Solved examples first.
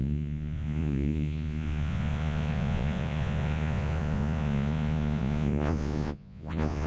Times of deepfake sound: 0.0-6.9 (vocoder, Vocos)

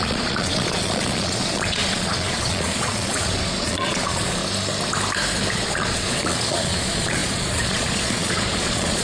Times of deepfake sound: 0.0-4.4 (vocoder, Vocos); 5.5-9.0

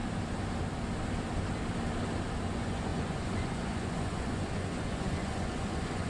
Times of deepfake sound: 2.5-6.1 (vocoder, Vocos)

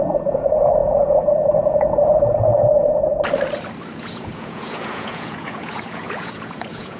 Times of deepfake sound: 0.0-3.1 (vocoder, Vocos); 3.9-7.0

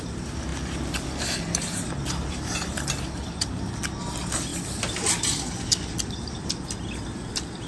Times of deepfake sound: none